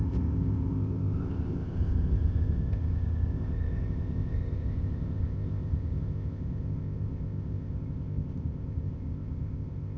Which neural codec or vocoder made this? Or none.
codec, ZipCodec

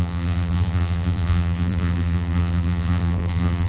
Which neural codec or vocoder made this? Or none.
vocoder, BigVGAN v2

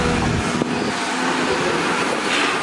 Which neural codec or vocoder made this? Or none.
none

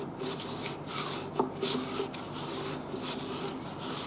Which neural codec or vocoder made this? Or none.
none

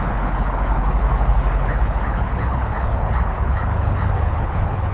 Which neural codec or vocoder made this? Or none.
codec, HILCodec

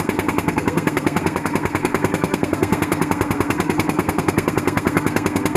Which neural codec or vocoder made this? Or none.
codec, SNAC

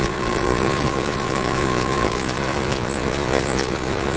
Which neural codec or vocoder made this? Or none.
vocoder, Vocos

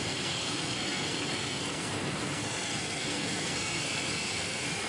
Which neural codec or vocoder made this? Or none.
codec, SNAC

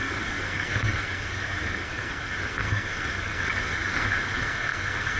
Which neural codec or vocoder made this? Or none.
codec, SNAC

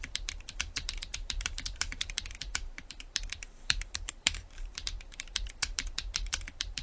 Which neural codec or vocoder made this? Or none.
vocoder, BigVGAN v2